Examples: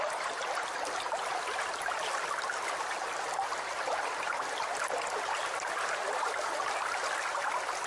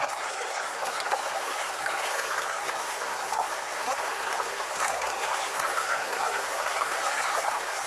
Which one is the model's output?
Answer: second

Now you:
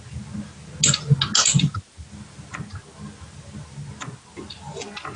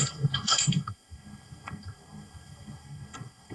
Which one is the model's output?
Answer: second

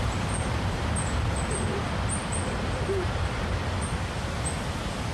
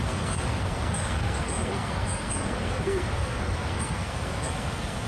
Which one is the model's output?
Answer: second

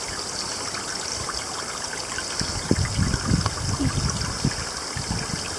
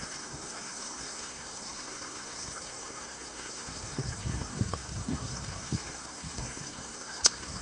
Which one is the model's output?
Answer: second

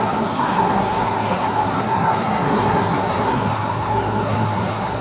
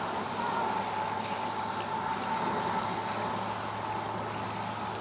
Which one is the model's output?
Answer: first